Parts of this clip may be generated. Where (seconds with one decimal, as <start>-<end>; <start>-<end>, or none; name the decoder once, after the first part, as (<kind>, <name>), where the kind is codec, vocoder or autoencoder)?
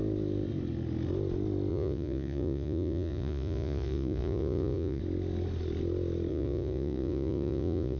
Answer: 1.7-5.0 (vocoder, Vocos); 6.3-8.0